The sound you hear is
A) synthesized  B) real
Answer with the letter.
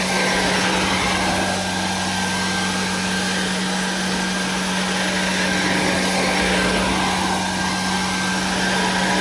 B